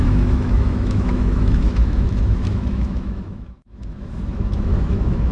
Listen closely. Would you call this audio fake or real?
fake